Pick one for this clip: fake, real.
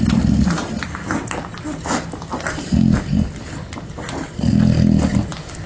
real